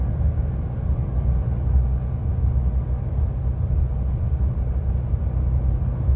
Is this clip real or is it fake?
real